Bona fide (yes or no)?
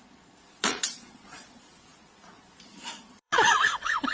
no